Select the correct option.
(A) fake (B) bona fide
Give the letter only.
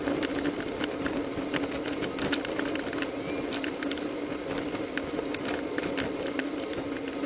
B